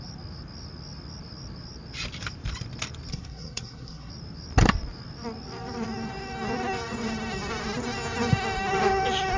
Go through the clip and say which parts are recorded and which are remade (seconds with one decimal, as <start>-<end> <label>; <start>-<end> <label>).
0.0-3.1 recorded; 3.1-4.1 remade; 4.1-9.4 recorded